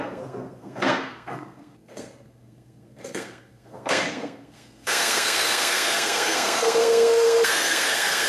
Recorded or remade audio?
remade